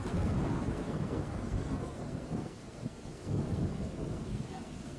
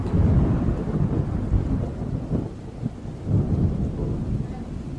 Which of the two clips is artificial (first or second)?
first